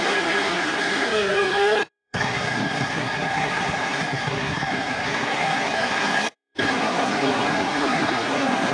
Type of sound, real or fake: fake